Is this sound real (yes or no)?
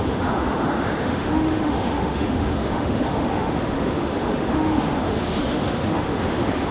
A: no